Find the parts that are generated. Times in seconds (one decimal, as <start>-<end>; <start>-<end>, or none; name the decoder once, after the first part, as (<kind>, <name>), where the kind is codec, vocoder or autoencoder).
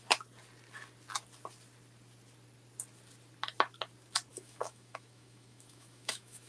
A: 4.3-6.5 (autoencoder, DAC-VAE)